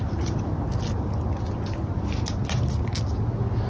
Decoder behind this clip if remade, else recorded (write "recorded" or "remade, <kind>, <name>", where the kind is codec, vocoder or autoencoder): recorded